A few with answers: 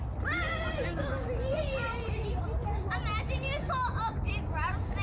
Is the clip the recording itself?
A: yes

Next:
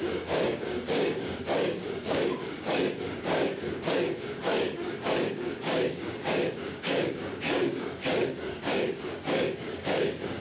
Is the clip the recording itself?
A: no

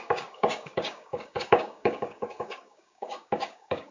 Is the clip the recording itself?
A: no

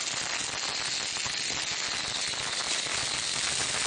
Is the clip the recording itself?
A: yes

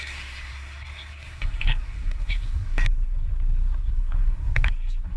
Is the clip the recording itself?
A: no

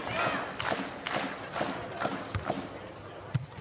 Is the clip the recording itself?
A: yes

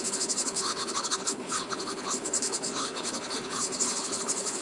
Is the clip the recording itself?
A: no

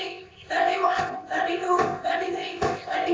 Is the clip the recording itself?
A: no